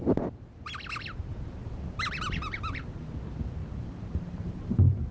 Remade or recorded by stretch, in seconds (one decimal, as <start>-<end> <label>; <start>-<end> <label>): 0.0-1.6 recorded; 1.6-2.8 remade; 2.8-3.6 recorded; 3.6-5.1 remade